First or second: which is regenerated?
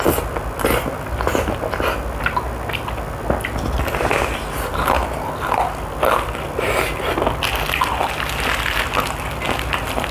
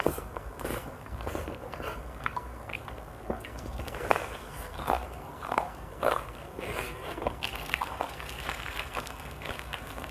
second